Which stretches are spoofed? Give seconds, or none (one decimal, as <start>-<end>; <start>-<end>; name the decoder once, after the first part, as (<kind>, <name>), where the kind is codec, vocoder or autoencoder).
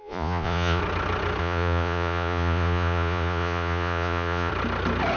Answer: 0.0-0.8 (vocoder, Vocos); 1.4-4.5